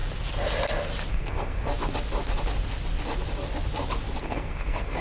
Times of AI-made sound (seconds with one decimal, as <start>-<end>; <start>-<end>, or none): 1.1-1.7; 4.2-5.0